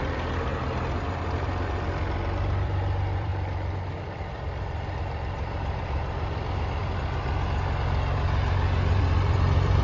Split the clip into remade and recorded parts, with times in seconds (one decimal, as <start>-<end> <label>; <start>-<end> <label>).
0.0-0.5 remade; 0.5-1.2 recorded; 1.2-3.3 remade; 3.3-4.1 recorded; 4.1-6.8 remade; 6.8-9.0 recorded; 9.0-9.8 remade